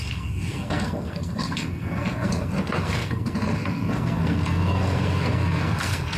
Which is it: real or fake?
fake